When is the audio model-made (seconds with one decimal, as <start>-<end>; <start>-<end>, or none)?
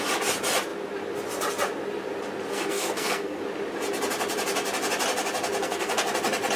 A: 2.5-3.4; 5.6-6.1